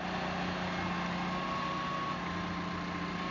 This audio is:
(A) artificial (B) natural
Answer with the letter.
B